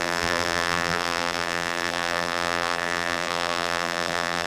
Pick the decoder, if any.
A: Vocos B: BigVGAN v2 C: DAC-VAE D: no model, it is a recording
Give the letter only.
B